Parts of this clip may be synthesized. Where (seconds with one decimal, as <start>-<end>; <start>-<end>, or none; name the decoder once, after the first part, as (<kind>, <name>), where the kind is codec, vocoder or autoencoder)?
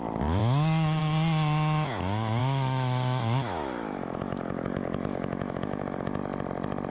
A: 2.4-6.2 (autoencoder, DAC-VAE)